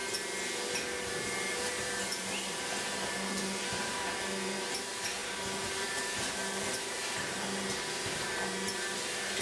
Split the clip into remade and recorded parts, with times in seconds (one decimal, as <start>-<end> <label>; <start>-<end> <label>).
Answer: 0.0-1.0 recorded; 1.0-9.4 remade